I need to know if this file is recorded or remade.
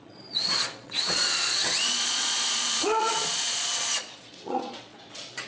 remade